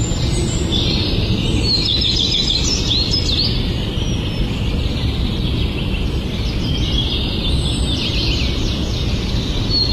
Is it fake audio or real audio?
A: real